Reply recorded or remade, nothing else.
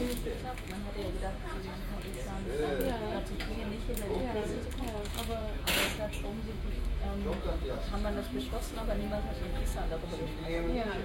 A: remade